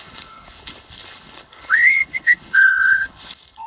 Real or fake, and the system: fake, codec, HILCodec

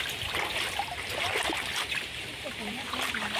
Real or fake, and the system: fake, vocoder, BigVGAN v2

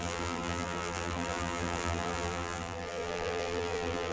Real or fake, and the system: fake, vocoder, BigVGAN v2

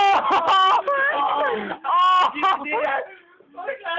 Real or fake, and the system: real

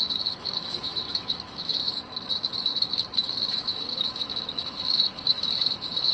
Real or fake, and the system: fake, autoencoder, DAC-VAE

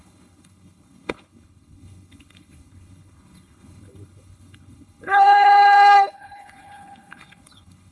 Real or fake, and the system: fake, codec, HILCodec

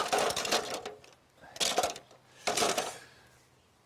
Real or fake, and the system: real